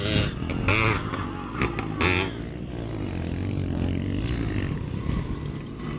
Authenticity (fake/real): real